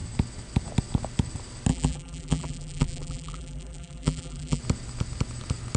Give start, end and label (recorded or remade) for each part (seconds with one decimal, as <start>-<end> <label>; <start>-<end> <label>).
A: 0.0-1.7 recorded; 1.7-4.6 remade; 4.6-5.8 recorded